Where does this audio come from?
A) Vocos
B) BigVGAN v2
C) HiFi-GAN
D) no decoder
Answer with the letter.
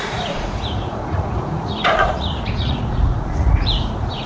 A